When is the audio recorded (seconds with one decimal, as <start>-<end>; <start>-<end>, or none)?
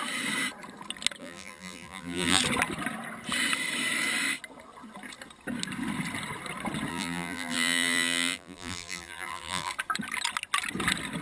0.0-1.2; 2.4-6.9; 9.7-11.2